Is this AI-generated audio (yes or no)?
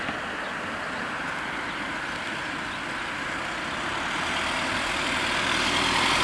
no